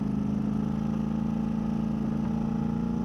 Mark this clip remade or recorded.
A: recorded